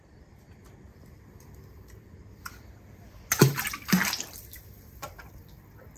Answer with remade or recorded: remade